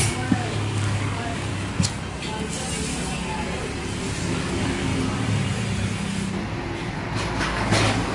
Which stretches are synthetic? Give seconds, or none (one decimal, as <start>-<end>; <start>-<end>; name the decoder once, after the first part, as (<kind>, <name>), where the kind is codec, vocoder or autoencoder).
0.0-1.5 (codec, DAC); 4.2-4.9; 7.4-8.1